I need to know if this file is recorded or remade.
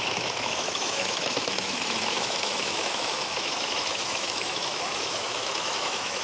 remade